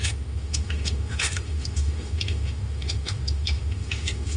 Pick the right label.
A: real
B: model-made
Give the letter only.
B